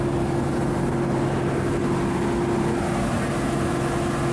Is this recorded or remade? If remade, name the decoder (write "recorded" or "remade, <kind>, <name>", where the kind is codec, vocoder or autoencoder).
recorded